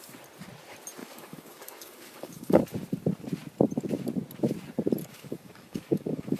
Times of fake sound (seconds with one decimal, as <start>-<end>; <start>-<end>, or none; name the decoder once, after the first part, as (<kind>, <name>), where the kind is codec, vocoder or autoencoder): 1.0-2.6 (codec, DAC); 5.0-6.4